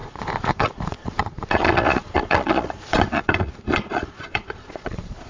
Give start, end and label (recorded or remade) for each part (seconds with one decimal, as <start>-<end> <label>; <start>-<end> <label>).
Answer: 0.0-5.3 remade